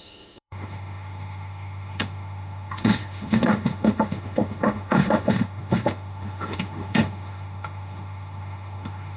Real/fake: fake